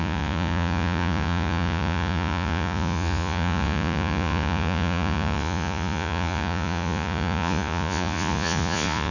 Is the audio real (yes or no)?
no